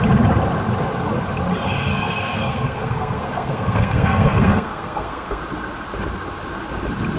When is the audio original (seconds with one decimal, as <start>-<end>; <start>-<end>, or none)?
0.0-1.9; 5.4-7.2